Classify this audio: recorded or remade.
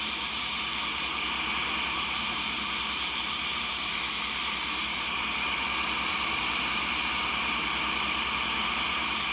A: remade